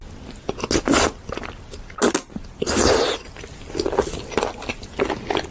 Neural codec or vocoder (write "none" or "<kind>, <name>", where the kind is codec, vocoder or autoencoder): none